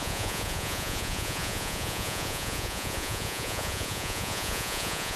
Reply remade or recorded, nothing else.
remade